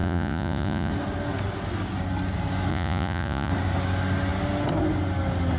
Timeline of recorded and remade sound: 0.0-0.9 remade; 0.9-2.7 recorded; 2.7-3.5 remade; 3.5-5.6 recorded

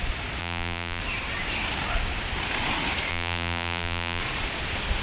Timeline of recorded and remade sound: 0.0-0.4 recorded; 0.4-1.0 remade; 1.0-3.1 recorded; 3.1-4.2 remade; 4.2-5.0 recorded